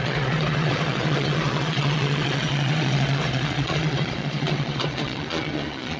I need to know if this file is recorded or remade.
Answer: remade